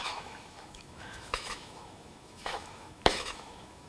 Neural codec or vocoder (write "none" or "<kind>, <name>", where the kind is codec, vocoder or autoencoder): autoencoder, DAC-VAE